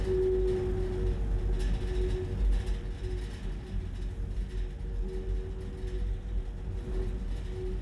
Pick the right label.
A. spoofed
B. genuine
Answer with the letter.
B